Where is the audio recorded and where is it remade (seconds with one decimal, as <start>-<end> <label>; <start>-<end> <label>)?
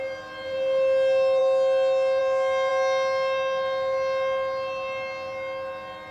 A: 0.0-6.1 recorded